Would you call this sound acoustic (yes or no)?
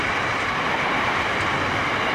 no